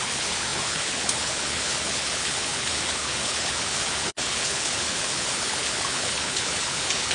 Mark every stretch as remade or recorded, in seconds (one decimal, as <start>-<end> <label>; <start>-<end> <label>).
0.0-7.1 remade